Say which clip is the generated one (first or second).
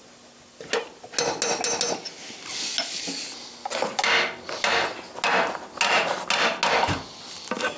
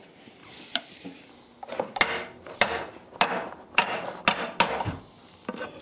second